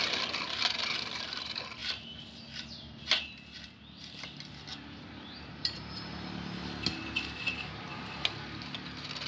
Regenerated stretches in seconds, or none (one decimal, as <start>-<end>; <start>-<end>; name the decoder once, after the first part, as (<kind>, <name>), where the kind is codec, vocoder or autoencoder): none